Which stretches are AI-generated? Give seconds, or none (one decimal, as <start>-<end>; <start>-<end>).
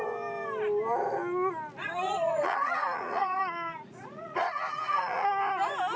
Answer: 1.8-5.3